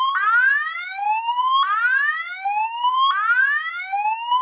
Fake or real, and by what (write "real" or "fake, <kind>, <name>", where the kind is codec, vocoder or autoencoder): real